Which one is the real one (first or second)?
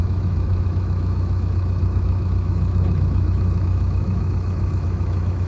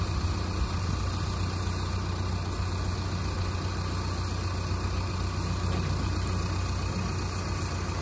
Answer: second